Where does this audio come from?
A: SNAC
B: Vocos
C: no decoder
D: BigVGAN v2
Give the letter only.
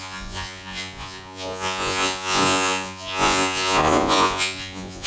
B